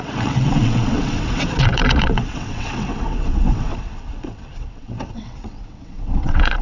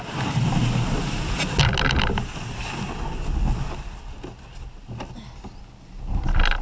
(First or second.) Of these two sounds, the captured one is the second